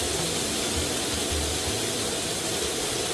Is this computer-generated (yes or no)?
no